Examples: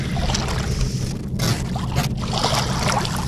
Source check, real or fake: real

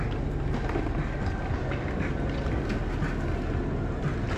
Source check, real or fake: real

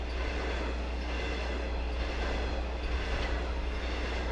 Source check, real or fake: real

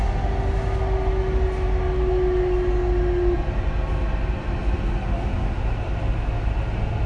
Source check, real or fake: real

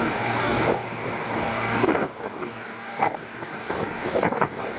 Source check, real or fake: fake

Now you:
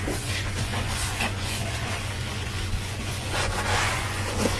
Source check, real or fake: fake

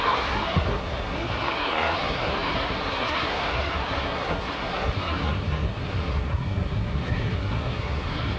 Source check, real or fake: fake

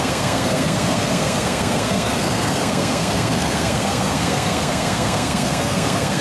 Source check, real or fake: fake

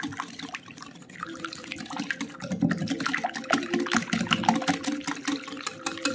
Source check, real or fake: real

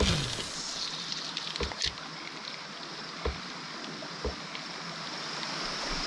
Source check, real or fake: real